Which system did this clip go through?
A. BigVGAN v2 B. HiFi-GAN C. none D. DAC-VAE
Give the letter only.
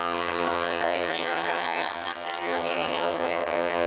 B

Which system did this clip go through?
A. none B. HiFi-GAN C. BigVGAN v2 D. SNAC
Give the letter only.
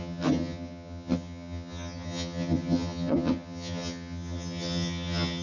B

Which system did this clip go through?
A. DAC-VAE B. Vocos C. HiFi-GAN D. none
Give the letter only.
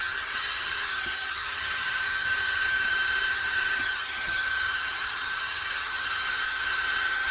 C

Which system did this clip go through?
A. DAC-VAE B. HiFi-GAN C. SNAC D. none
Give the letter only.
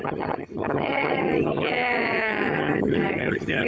B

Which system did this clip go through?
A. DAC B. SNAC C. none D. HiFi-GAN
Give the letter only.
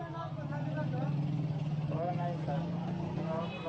C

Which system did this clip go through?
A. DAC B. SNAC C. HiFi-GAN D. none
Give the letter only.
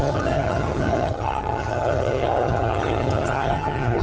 C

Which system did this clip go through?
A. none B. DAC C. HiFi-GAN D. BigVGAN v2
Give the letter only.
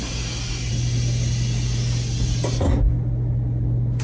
A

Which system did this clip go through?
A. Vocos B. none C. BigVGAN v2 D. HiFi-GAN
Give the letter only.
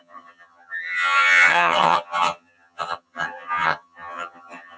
D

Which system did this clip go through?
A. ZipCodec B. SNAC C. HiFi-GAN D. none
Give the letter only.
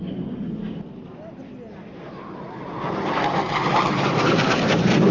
D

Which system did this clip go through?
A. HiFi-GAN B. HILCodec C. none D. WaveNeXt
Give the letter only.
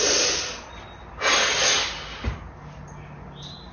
C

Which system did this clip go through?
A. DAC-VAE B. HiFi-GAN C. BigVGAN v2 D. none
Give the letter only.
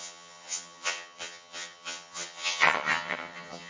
B